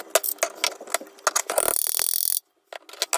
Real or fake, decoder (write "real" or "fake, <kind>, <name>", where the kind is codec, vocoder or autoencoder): real